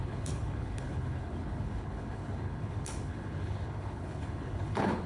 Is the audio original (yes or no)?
no